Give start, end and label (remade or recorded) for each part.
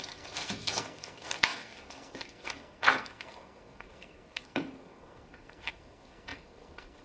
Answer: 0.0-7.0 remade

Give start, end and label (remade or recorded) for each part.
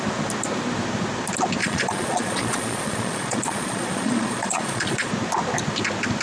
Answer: 0.0-1.6 recorded; 1.6-5.1 remade; 5.1-6.2 recorded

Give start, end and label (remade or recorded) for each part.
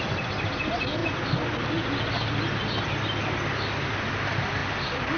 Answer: 0.0-5.2 recorded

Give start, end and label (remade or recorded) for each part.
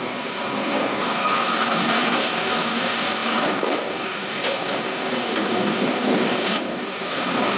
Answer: 0.0-7.6 remade